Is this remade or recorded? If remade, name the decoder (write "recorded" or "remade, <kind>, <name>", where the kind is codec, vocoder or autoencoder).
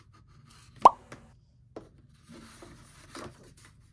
recorded